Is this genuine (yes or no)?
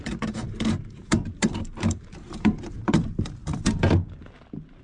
no